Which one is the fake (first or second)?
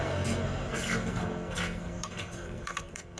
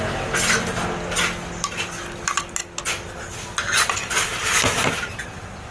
first